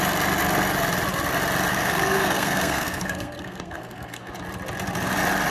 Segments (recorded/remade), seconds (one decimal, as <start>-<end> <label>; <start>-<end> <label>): 0.0-1.7 recorded; 1.7-4.3 remade; 4.3-5.5 recorded